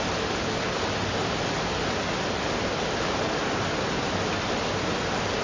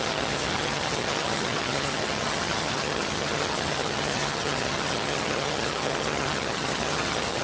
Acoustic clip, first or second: first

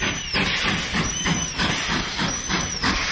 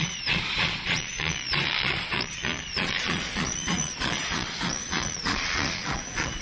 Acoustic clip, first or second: first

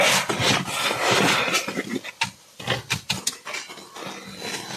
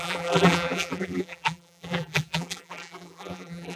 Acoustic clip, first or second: first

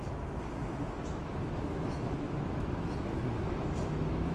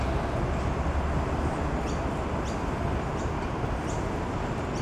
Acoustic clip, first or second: second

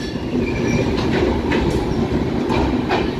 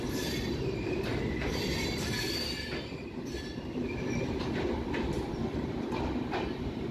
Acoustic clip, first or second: first